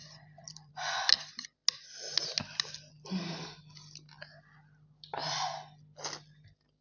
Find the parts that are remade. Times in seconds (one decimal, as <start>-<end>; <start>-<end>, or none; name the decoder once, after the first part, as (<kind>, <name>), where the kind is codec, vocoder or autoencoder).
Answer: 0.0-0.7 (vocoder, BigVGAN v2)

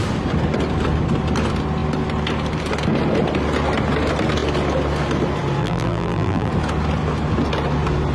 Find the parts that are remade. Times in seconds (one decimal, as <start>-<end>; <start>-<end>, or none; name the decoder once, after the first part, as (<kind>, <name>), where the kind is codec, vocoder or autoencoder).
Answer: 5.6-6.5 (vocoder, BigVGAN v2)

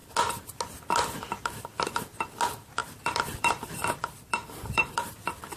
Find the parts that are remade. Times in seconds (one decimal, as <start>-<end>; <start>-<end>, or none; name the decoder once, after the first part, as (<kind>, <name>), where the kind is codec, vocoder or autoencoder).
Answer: 2.8-5.1 (vocoder, BigVGAN v2)